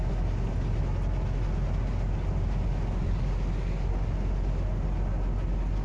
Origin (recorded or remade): recorded